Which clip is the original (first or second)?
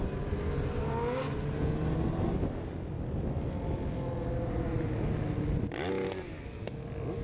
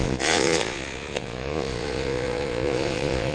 first